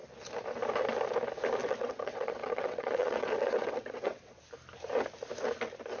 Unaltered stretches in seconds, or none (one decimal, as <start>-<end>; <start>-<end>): 0.0-1.6; 4.4-6.0